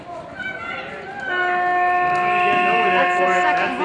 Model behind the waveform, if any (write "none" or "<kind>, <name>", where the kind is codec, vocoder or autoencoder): none